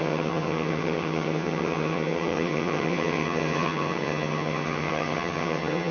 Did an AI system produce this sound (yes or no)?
yes